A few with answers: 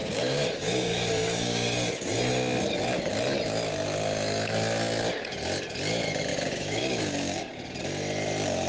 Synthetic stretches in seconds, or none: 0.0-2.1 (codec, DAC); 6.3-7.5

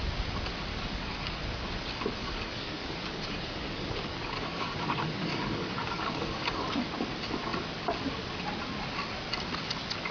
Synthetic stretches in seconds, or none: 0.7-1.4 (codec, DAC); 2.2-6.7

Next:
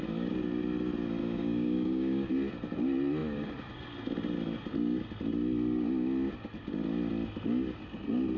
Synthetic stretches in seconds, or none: 1.2-2.3 (codec, DAC)